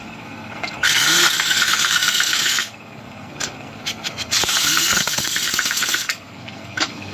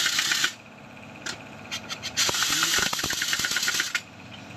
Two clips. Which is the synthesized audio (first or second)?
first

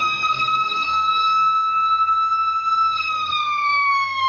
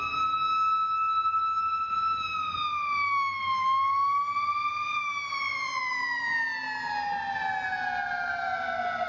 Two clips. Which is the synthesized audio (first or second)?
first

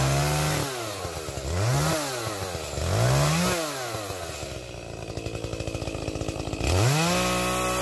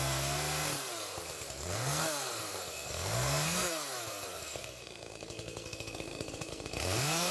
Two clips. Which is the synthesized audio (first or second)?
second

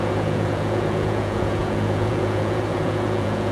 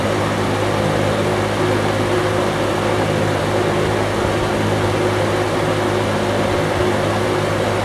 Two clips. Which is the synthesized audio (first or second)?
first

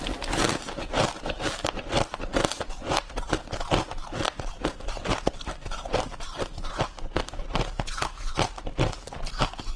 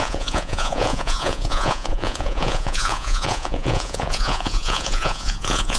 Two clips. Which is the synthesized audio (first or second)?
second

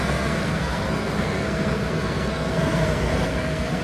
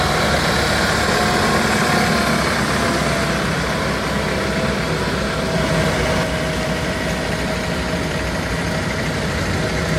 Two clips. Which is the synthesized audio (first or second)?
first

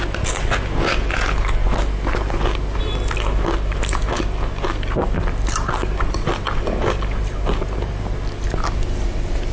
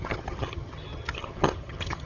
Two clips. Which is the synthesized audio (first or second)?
second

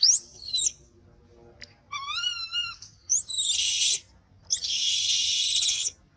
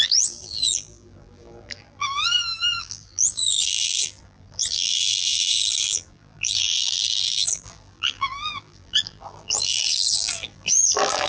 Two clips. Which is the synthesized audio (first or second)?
second